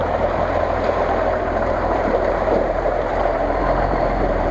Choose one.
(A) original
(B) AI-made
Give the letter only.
B